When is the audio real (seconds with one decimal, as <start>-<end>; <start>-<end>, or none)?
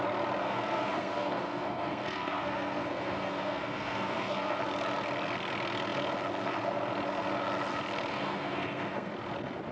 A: 0.0-0.4; 4.6-8.1; 9.1-9.7